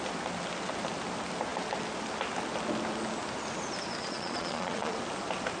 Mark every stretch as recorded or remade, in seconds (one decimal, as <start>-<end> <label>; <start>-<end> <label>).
0.0-4.0 recorded; 4.0-5.0 remade; 5.0-5.6 recorded

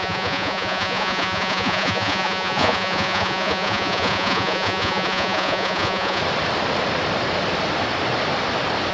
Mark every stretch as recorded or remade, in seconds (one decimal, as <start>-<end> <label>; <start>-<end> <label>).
0.0-6.2 remade; 6.2-8.9 recorded

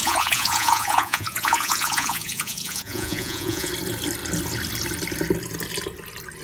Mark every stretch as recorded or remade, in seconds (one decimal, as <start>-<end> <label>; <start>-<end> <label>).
0.0-3.7 remade; 3.7-6.4 recorded

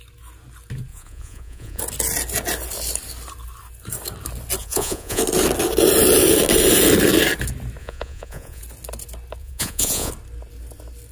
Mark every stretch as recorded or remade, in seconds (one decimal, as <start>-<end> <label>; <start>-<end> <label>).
0.0-0.9 recorded; 0.9-1.8 remade; 1.8-4.6 recorded; 4.6-5.2 remade; 5.2-7.8 recorded; 7.8-8.6 remade; 8.6-9.4 recorded; 9.4-10.1 remade; 10.1-11.1 recorded

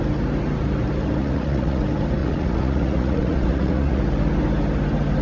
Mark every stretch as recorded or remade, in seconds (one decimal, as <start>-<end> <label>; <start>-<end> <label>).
0.0-1.2 recorded; 1.2-1.8 remade; 1.8-2.2 recorded; 2.2-4.0 remade; 4.0-5.2 recorded